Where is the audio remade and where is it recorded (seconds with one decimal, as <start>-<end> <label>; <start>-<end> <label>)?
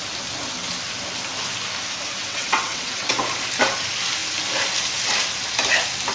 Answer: 0.0-2.2 recorded; 2.2-3.1 remade; 3.1-6.1 recorded